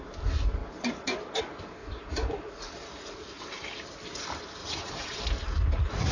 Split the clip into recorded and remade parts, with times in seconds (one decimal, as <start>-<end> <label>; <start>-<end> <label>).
0.0-1.8 recorded; 1.8-3.4 remade; 3.4-4.6 recorded; 4.6-5.2 remade; 5.2-6.1 recorded